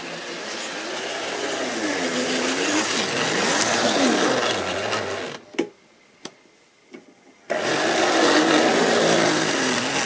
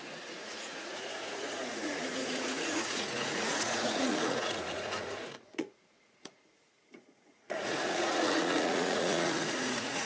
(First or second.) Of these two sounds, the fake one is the second